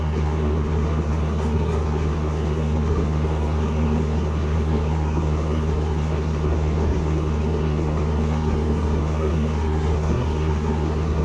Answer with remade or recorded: remade